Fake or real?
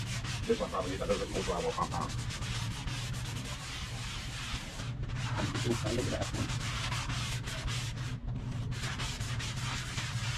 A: fake